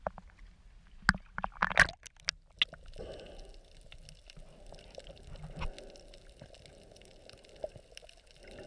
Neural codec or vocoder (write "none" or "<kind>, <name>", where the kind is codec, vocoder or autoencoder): none